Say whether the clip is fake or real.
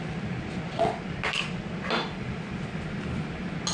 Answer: real